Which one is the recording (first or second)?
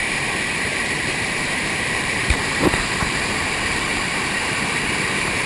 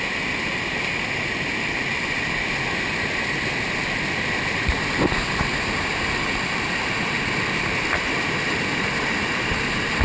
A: second